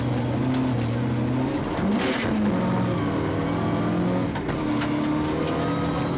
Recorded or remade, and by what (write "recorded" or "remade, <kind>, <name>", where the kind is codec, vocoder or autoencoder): recorded